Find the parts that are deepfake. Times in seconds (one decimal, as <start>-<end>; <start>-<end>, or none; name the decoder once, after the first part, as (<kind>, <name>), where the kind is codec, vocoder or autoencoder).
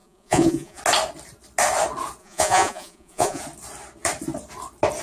0.0-0.8 (vocoder, Vocos); 2.2-3.4